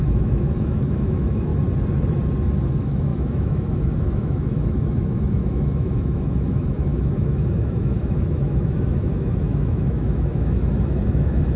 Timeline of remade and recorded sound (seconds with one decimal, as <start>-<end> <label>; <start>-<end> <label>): 0.0-1.5 remade; 1.5-2.7 recorded; 2.7-11.6 remade